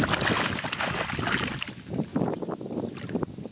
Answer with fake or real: real